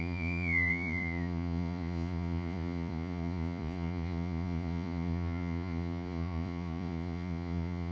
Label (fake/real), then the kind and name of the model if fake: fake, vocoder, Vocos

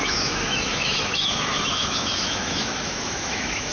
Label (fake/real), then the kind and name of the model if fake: fake, autoencoder, DAC-VAE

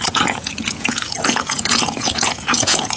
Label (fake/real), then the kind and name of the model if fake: fake, vocoder, Vocos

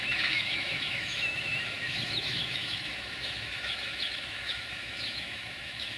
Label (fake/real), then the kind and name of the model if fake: fake, autoencoder, DAC-VAE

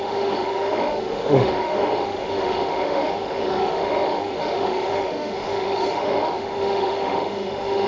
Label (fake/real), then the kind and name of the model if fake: fake, autoencoder, DAC-VAE